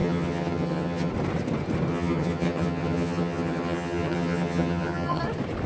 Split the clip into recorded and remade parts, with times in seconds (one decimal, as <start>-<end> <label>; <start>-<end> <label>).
0.0-1.1 remade; 1.1-1.9 recorded; 1.9-5.2 remade; 5.2-5.7 recorded